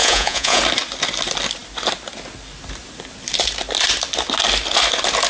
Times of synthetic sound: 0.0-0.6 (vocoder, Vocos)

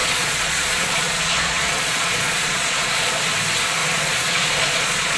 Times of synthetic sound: 0.0-3.1 (vocoder, Vocos); 3.8-5.2

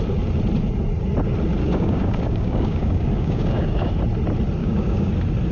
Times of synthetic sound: 1.6-3.9 (codec, DAC); 4.6-5.1

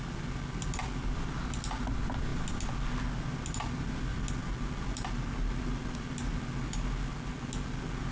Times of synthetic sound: none

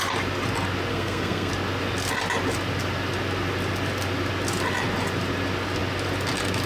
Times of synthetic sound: 0.9-1.5 (codec, SNAC)

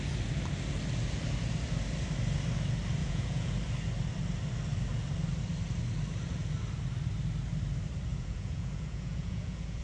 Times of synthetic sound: 3.0-3.5 (vocoder, Vocos); 8.1-9.8